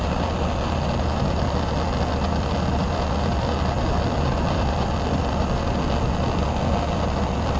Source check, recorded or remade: recorded